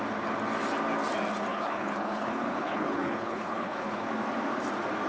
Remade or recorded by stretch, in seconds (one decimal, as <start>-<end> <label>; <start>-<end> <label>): 0.0-1.5 recorded; 1.5-4.1 remade; 4.1-5.1 recorded